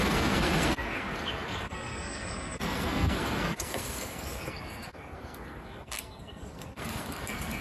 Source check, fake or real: fake